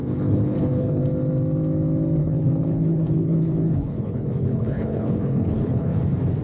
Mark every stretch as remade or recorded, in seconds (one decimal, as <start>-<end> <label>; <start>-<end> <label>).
0.0-1.0 remade; 1.0-2.2 recorded; 2.2-6.0 remade; 6.0-6.4 recorded